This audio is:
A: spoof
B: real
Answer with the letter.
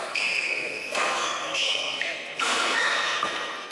A